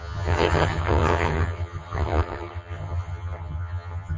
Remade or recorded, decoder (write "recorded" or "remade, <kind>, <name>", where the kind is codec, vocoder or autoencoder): remade, vocoder, HiFi-GAN